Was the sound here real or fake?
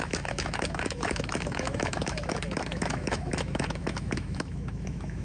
fake